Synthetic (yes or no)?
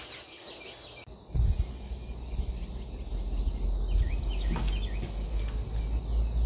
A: no